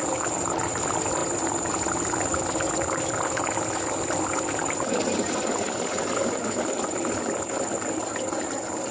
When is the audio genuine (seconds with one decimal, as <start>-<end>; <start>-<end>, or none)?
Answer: 0.0-8.9